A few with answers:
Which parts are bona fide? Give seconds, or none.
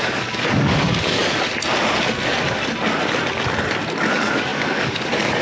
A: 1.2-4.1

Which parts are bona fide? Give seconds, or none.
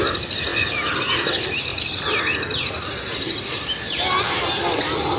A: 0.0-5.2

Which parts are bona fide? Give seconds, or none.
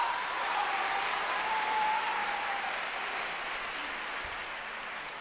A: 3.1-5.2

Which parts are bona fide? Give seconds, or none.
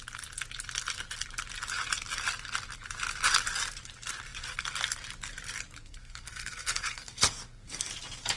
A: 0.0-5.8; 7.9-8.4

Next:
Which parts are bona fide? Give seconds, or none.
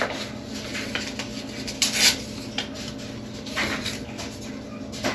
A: 0.0-5.1